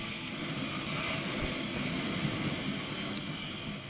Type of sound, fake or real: real